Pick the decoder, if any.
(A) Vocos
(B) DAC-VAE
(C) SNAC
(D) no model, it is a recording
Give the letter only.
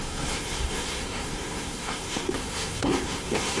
C